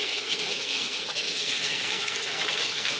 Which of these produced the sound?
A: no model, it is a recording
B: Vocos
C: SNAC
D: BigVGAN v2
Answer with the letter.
C